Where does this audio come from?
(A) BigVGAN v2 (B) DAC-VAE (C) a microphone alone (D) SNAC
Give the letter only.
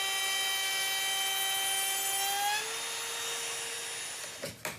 C